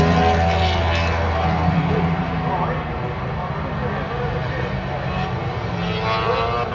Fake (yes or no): no